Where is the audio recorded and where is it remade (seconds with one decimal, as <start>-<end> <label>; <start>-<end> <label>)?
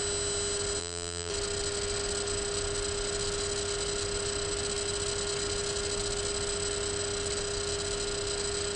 0.0-0.8 recorded; 0.8-1.3 remade; 1.3-8.8 recorded